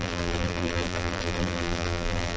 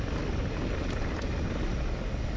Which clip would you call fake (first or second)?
first